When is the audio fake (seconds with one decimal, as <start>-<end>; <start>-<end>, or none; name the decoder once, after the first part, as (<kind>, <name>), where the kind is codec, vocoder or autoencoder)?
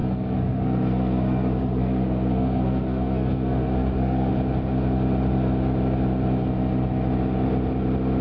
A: 0.0-4.3 (codec, SNAC)